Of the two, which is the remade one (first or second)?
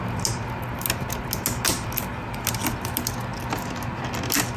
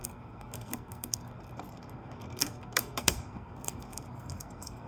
second